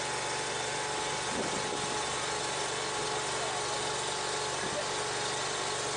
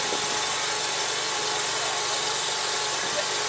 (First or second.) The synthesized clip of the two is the second